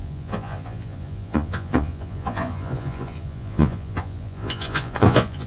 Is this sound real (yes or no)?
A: no